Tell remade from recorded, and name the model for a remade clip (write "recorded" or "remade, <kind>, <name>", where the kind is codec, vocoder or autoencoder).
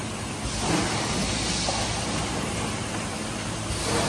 recorded